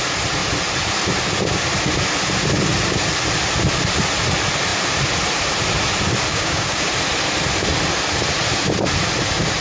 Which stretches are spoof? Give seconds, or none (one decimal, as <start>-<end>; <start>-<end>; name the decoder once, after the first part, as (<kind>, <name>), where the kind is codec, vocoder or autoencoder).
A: 6.3-6.9 (codec, DAC)